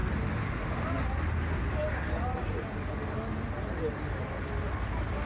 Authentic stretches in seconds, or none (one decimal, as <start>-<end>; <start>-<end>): 0.0-5.3